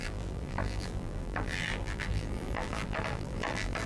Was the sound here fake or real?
fake